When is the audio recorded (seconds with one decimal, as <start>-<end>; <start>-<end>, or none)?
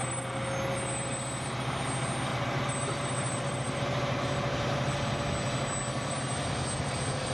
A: 0.0-2.3; 5.1-7.3